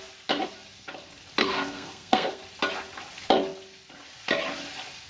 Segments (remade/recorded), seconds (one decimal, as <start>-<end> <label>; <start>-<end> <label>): 0.0-1.4 recorded; 1.4-2.4 remade; 2.4-5.1 recorded